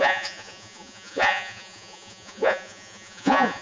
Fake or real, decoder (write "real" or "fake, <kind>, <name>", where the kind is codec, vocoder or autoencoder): fake, vocoder, Vocos